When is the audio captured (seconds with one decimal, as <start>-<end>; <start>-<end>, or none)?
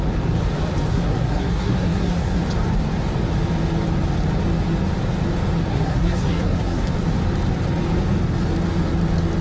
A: 0.0-0.9; 2.4-5.7; 6.9-9.4